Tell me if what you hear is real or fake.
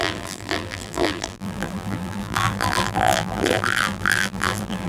fake